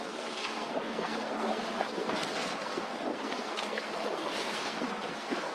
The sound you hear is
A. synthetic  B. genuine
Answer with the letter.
A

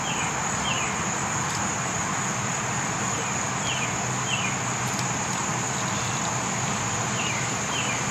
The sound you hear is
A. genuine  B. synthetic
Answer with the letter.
A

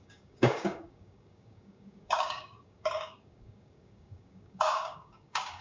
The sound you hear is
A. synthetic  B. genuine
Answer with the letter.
A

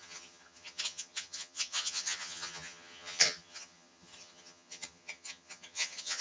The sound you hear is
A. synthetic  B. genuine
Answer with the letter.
A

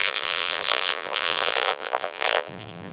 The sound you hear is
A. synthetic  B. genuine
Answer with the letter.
A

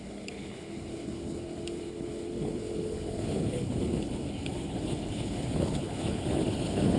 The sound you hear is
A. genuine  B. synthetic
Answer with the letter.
B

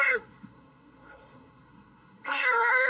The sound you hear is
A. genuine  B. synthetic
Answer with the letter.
B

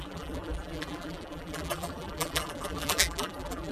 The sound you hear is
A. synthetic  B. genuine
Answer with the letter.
A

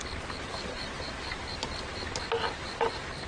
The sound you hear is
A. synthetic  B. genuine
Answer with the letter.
B